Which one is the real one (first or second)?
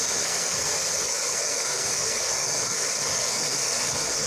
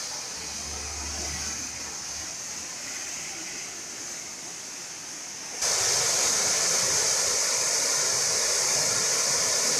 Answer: second